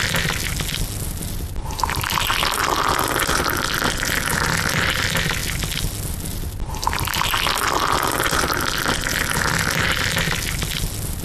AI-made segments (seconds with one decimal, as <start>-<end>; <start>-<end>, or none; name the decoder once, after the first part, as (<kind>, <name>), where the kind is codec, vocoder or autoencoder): none